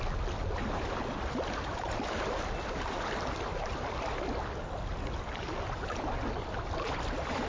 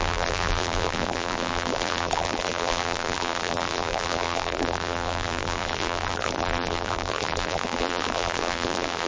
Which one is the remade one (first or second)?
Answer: second